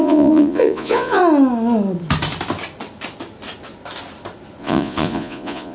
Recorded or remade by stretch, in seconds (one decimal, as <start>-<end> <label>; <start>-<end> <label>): 0.0-1.2 remade; 1.2-4.6 recorded; 4.6-5.7 remade